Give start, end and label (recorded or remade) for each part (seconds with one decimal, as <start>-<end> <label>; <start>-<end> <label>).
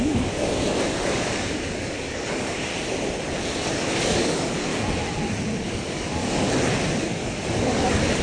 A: 0.0-2.7 remade; 2.7-3.7 recorded; 3.7-4.7 remade; 4.7-5.6 recorded; 5.6-6.4 remade; 6.4-7.0 recorded; 7.0-8.2 remade